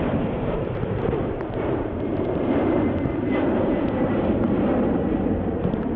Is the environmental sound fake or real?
fake